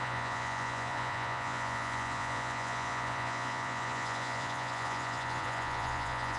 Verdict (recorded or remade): remade